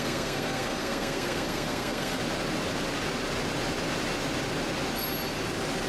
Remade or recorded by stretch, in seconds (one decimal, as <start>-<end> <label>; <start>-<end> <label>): 0.0-2.2 remade; 2.2-5.9 recorded